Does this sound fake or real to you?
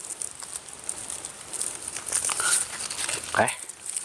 real